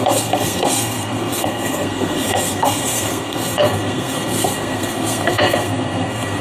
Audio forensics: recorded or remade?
remade